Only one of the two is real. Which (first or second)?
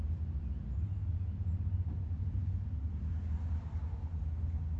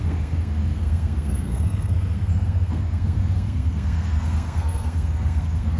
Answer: first